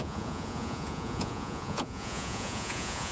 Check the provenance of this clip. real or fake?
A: fake